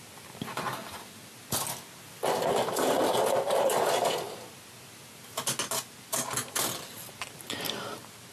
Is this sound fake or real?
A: real